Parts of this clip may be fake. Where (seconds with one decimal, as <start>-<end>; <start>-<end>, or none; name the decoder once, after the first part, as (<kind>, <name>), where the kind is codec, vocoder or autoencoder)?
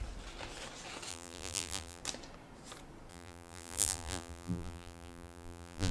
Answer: 1.1-2.0 (vocoder, BigVGAN v2); 3.1-5.9